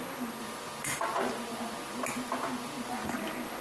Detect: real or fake real